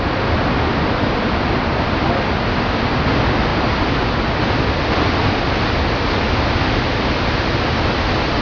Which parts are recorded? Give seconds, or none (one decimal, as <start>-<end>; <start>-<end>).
0.0-8.4